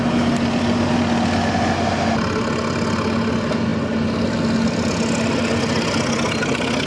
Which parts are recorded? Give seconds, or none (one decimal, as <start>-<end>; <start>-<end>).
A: 0.0-6.9